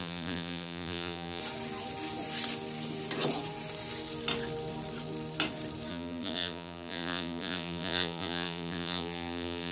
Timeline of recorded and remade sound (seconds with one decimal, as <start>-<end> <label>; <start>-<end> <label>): 0.0-1.4 remade; 1.4-5.9 recorded; 5.9-9.7 remade